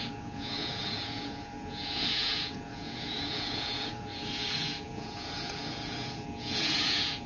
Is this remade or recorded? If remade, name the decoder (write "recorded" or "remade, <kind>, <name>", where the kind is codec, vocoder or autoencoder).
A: remade, vocoder, Vocos